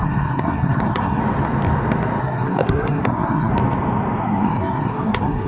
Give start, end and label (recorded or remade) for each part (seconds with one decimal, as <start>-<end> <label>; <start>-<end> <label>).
0.0-1.2 remade; 1.2-2.2 recorded; 2.2-3.5 remade; 3.5-4.2 recorded; 4.2-5.5 remade